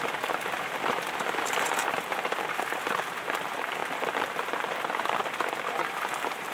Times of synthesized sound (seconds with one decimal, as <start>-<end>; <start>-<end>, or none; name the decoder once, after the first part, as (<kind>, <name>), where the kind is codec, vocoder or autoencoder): 0.0-3.8 (vocoder, BigVGAN v2); 4.3-6.5